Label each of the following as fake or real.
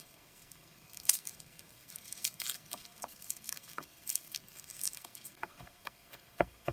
fake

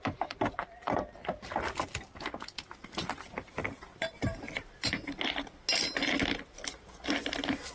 real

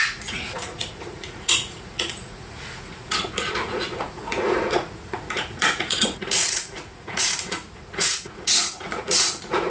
fake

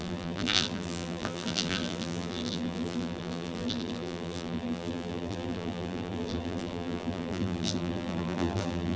fake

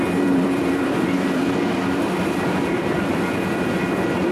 fake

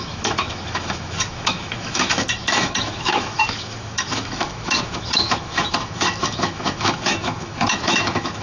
fake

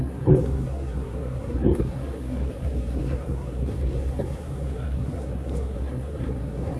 fake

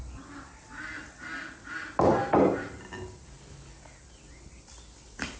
real